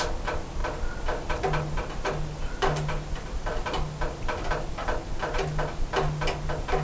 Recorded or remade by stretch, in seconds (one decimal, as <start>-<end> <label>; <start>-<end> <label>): 0.0-6.8 recorded